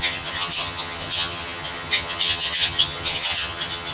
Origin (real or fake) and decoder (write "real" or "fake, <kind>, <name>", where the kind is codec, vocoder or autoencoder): fake, vocoder, HiFi-GAN